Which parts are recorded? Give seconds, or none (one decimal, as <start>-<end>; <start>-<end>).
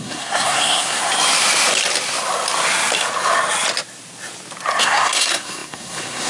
1.0-4.8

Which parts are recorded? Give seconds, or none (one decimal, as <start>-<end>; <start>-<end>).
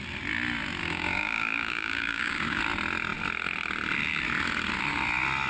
0.0-0.8; 2.6-5.5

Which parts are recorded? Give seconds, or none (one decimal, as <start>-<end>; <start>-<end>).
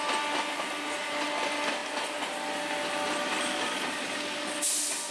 0.0-5.1